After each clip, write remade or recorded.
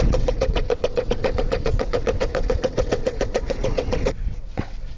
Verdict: remade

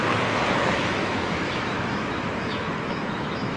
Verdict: remade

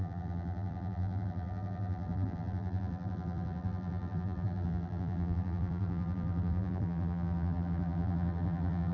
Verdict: remade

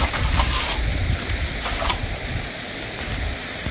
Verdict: recorded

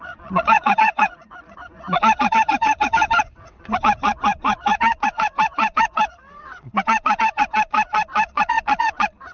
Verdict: remade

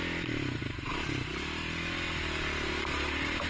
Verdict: recorded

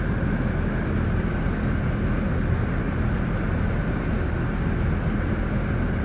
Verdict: recorded